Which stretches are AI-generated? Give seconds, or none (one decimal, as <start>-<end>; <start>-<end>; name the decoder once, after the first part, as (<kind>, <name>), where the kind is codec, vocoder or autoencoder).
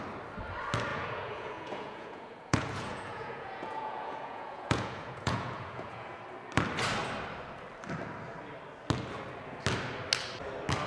0.9-6.2 (vocoder, Vocos)